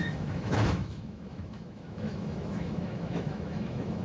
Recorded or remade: remade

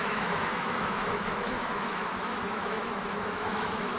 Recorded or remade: remade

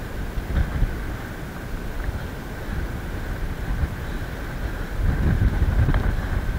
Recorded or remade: recorded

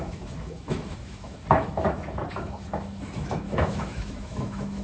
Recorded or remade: remade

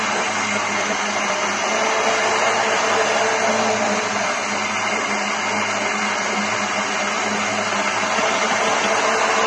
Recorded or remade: recorded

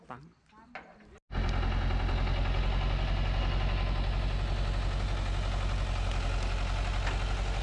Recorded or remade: recorded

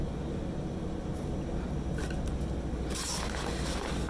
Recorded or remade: recorded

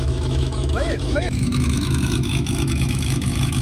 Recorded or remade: remade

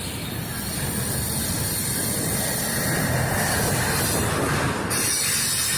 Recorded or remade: recorded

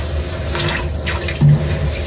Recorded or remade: recorded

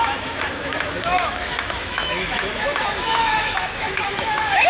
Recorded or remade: remade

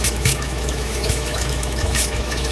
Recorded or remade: remade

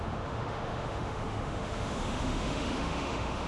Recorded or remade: remade